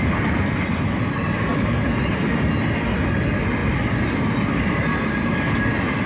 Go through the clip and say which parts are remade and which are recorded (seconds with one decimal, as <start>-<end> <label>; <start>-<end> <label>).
0.0-6.1 recorded